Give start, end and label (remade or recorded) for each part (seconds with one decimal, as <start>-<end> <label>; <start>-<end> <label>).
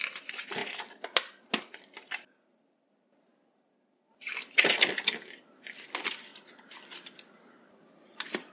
0.0-6.3 recorded; 6.3-7.5 remade; 7.5-8.5 recorded